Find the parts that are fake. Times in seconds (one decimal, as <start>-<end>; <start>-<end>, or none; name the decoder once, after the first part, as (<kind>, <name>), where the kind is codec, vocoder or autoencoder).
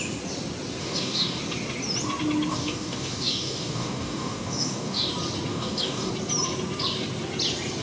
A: 0.8-1.4 (codec, DAC); 2.5-5.1; 5.5-6.1